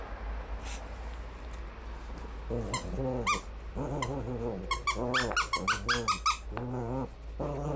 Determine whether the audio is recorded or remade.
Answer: recorded